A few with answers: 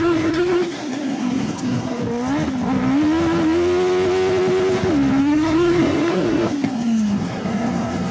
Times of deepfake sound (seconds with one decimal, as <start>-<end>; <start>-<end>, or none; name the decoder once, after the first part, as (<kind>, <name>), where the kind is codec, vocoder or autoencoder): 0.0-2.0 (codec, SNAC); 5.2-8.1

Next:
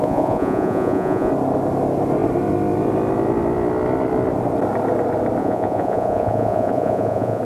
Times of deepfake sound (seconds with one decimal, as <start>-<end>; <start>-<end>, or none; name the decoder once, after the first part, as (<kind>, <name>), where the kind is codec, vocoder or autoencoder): 0.0-1.3 (vocoder, Vocos); 5.4-7.4

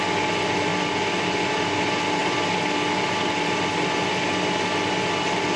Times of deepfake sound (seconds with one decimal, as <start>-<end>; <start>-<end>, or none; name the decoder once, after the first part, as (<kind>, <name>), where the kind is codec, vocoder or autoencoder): none

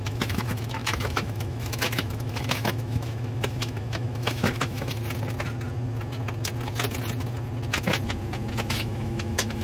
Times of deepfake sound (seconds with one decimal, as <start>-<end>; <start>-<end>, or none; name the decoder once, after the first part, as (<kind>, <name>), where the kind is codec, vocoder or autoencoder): 0.0-5.0 (autoencoder, DAC-VAE); 8.7-9.6

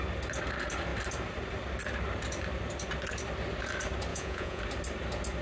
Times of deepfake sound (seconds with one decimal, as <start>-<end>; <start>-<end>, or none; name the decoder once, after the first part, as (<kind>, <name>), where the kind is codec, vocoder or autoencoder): 4.1-4.6 (vocoder, Vocos)

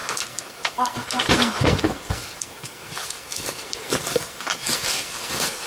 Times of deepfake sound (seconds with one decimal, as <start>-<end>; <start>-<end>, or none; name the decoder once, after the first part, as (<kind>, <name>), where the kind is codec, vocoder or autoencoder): 0.0-5.7 (codec, SNAC)